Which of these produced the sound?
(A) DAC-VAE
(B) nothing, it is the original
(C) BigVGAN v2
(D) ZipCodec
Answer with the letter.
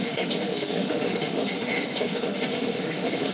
A